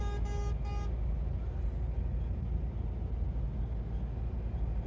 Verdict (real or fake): real